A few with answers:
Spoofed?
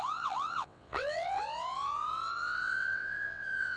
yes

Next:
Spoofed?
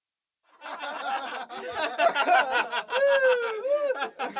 no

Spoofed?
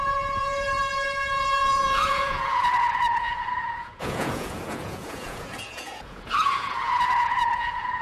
yes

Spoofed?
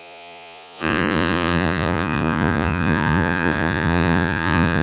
yes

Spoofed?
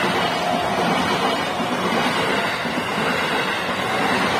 no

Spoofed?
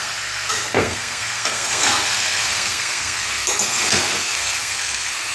yes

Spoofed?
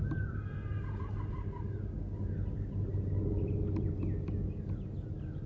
no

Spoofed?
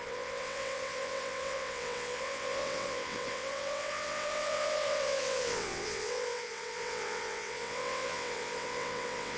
yes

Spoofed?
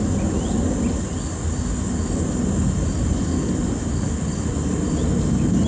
no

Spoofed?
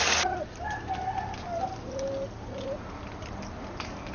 no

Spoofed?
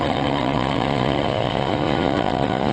yes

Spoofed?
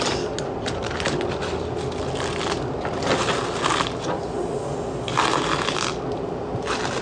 no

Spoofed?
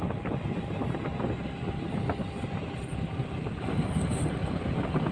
no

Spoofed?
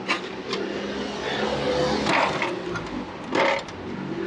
no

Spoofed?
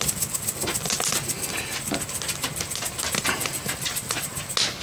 no